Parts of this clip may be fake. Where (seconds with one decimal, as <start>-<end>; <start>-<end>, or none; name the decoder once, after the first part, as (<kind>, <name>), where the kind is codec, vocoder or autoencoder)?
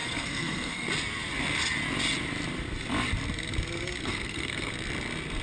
0.0-0.9 (codec, SNAC); 4.0-4.7